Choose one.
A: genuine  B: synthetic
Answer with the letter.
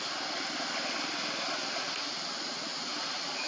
A